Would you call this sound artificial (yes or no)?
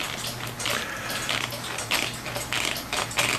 no